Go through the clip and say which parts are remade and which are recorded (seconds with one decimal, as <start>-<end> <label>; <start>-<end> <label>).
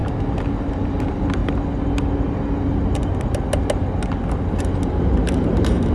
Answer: 0.0-0.7 recorded; 0.7-1.4 remade; 1.4-4.9 recorded; 4.9-5.9 remade